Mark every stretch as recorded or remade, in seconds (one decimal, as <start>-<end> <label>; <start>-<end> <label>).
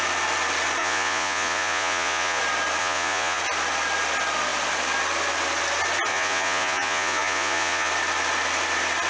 0.0-0.8 recorded; 0.8-2.4 remade; 2.4-2.8 recorded; 2.8-3.4 remade; 3.4-6.1 recorded; 6.1-7.9 remade; 7.9-9.1 recorded